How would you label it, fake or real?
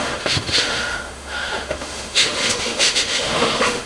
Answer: fake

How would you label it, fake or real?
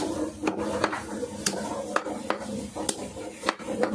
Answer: real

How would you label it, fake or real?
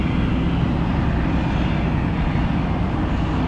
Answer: real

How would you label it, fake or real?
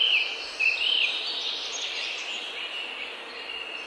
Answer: real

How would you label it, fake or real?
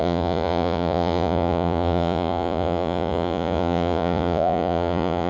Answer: fake